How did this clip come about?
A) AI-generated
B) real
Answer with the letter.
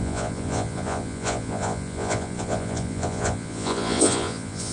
A